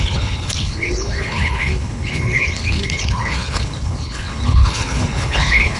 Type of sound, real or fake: fake